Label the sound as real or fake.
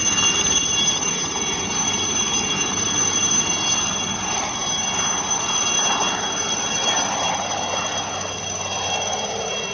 real